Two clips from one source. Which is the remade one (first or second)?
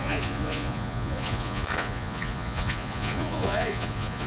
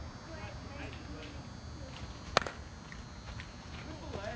first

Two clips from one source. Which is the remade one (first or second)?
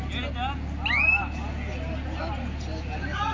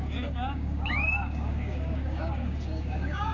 second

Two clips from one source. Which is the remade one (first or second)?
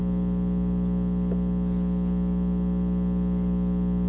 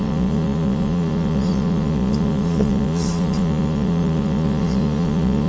second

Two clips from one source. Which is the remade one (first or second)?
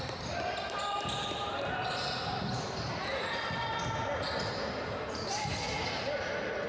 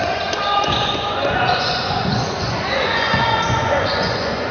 second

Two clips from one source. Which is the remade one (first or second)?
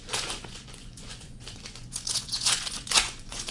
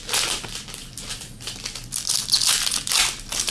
first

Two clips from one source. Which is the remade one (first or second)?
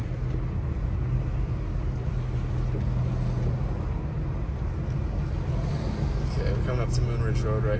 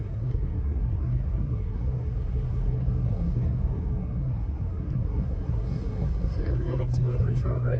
second